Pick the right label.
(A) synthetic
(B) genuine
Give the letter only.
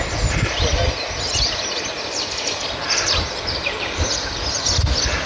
B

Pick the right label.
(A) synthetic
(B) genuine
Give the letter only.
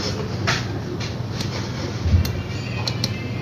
B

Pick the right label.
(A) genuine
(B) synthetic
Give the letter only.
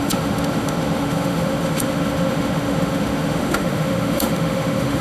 B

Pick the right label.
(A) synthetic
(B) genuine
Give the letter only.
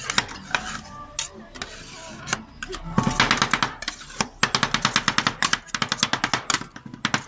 B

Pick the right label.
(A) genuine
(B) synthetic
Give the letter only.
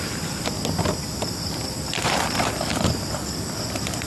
A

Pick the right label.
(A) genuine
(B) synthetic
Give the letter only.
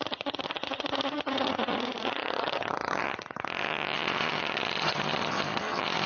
B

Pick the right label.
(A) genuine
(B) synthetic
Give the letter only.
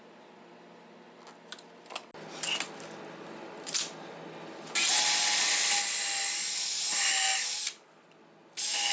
A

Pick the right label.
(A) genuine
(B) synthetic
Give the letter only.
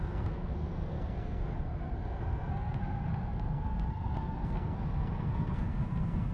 B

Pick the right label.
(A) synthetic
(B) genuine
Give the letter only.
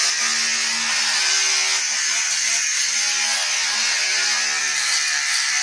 B